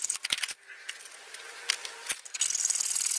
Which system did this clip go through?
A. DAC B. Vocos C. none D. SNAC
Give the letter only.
C